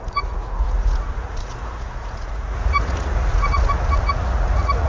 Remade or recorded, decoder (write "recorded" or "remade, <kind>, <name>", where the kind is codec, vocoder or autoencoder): remade, vocoder, Vocos